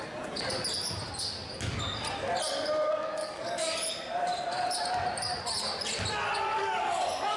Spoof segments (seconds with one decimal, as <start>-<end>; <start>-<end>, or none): 3.2-3.8; 6.5-7.4